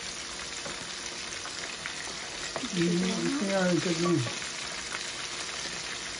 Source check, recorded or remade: recorded